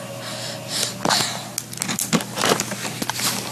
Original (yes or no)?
yes